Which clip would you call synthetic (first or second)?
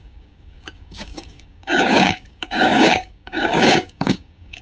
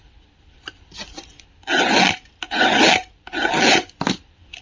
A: first